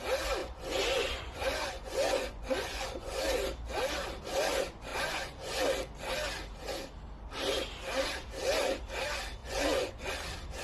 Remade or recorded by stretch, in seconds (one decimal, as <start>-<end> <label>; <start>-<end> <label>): 0.0-0.4 recorded; 0.4-3.2 remade; 3.2-4.9 recorded; 4.9-5.6 remade; 5.6-9.4 recorded; 9.4-10.1 remade; 10.1-10.6 recorded